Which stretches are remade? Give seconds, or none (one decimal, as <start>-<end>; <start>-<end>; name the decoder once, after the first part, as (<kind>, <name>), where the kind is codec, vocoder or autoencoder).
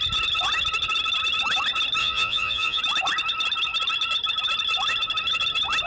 2.0-2.8 (vocoder, Vocos)